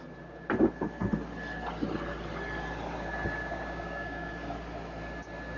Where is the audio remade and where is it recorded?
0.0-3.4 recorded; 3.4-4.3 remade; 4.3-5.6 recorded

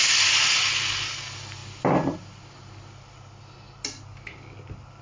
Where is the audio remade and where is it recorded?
0.0-5.0 recorded

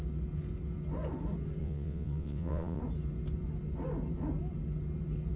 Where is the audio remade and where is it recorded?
0.0-1.6 recorded; 1.6-2.8 remade; 2.8-5.4 recorded

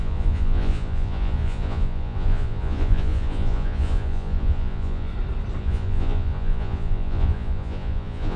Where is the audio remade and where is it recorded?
0.0-5.1 remade; 5.1-5.6 recorded; 5.6-8.4 remade

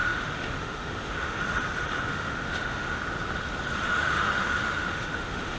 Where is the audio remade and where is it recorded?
0.0-1.4 remade; 1.4-2.1 recorded; 2.1-3.0 remade; 3.0-3.9 recorded; 3.9-5.6 remade

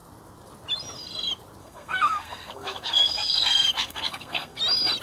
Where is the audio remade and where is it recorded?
0.0-1.6 recorded; 1.6-4.6 remade; 4.6-5.0 recorded